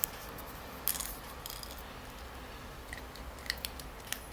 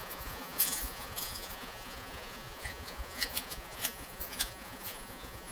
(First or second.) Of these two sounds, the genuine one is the first